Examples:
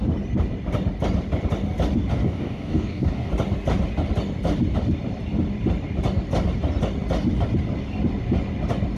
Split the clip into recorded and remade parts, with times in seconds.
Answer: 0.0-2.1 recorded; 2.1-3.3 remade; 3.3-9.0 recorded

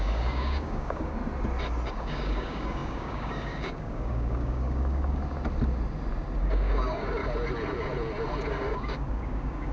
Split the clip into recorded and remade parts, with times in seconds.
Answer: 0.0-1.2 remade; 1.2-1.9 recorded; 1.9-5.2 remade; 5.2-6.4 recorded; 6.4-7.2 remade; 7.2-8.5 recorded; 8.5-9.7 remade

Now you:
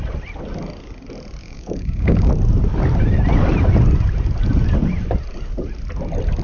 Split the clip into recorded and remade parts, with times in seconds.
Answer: 0.0-1.4 recorded; 1.4-2.3 remade; 2.3-6.4 recorded